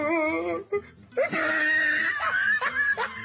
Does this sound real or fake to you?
real